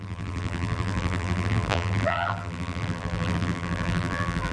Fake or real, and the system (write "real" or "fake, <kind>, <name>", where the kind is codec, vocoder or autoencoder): fake, vocoder, BigVGAN v2